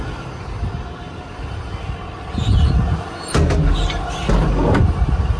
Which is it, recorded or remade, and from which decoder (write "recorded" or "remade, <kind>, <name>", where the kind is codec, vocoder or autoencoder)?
recorded